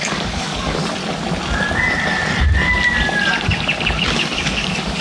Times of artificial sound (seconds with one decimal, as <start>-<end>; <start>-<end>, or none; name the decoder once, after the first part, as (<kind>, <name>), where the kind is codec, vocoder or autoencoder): 0.0-1.0 (codec, DAC); 4.0-5.0